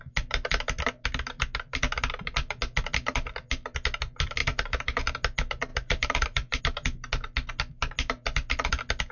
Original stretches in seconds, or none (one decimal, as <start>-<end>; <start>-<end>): 0.0-4.4; 5.0-5.7; 6.6-9.1